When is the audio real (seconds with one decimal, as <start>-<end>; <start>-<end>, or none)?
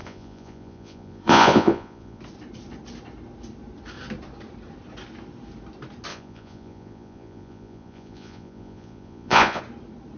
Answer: 2.2-6.1; 9.6-10.2